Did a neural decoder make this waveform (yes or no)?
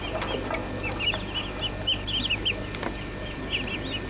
no